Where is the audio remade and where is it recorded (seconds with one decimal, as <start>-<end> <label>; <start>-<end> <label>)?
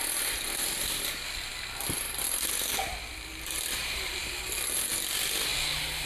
0.0-3.1 recorded; 3.1-4.9 remade; 4.9-5.5 recorded; 5.5-6.1 remade